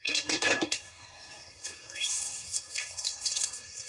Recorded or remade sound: remade